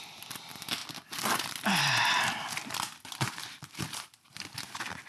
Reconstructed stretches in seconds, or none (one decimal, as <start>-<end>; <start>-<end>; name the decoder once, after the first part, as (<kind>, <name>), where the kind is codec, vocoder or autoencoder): none

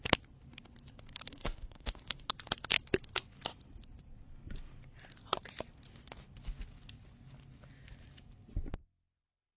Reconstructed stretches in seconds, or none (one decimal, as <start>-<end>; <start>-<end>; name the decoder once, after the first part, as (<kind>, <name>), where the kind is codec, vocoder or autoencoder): 1.3-2.3 (autoencoder, DAC-VAE)

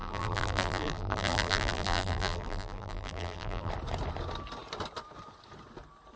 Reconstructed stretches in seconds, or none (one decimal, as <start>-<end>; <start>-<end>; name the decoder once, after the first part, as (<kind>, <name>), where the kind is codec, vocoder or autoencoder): 0.0-3.7 (vocoder, BigVGAN v2)

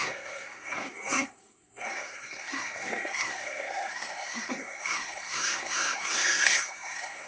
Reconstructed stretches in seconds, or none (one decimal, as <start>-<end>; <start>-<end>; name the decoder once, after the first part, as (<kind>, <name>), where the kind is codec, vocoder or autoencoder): 0.0-7.3 (codec, SNAC)

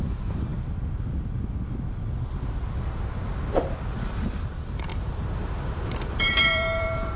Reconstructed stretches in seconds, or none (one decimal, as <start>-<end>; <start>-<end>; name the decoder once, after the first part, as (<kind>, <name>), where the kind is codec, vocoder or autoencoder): 0.0-0.5 (vocoder, BigVGAN v2); 4.4-7.2

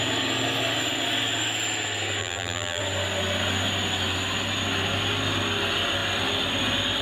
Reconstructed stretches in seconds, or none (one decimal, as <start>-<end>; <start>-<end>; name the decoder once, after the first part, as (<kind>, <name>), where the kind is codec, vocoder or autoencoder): 2.2-2.8 (vocoder, BigVGAN v2)

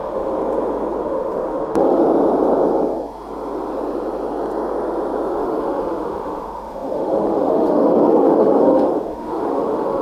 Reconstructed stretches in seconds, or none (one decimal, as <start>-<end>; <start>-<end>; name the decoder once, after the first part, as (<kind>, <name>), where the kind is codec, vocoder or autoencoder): 0.0-0.4 (autoencoder, DAC-VAE); 1.0-2.0; 5.3-10.0

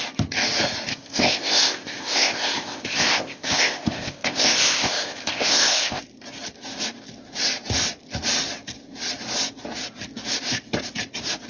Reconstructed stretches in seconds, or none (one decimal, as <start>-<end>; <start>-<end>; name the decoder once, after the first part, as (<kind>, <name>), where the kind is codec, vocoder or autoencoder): 0.9-6.0 (codec, ZipCodec)